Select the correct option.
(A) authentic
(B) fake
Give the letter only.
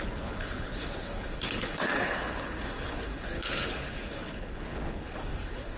B